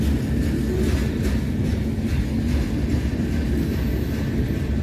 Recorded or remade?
recorded